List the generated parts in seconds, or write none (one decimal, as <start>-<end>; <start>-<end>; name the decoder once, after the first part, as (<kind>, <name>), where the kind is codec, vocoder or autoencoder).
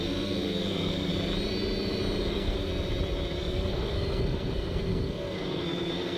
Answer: 0.0-1.1 (codec, SNAC); 2.3-2.7; 3.3-6.2